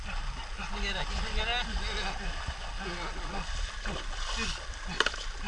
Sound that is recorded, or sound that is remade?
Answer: recorded